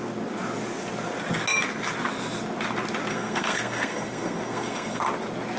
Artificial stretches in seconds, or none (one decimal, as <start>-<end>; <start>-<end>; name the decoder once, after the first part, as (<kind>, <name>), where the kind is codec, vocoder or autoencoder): 3.1-5.0 (codec, SNAC)